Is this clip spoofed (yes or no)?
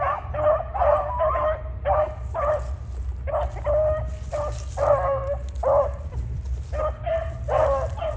no